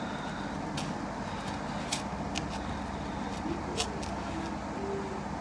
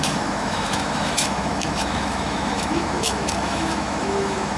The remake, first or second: second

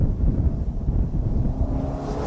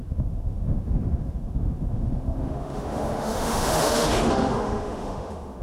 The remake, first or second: second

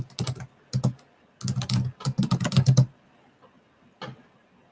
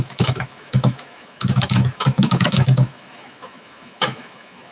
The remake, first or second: second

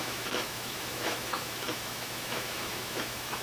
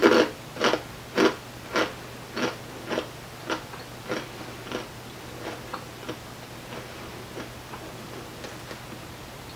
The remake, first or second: first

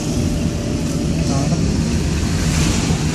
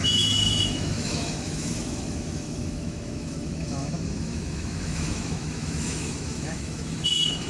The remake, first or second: second